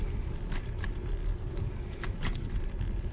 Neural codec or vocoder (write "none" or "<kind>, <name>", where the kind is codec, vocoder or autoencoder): none